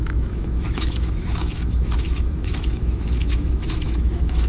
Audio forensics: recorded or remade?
remade